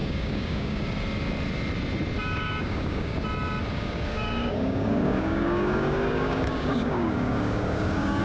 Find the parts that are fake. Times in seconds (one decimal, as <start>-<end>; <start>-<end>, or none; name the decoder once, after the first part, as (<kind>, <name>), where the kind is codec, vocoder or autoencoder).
0.0-0.9 (codec, DAC); 2.2-3.2; 3.7-8.2